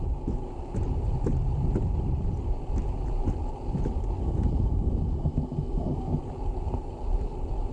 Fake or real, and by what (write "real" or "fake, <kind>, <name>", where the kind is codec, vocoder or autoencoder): real